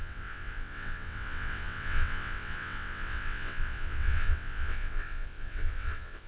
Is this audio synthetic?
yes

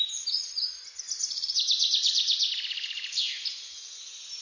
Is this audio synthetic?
yes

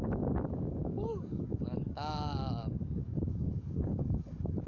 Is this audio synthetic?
yes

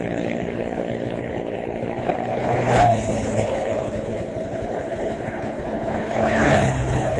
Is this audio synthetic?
yes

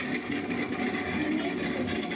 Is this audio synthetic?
no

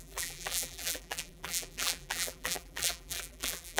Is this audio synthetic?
yes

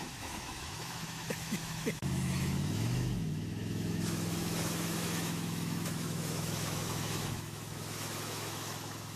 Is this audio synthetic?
yes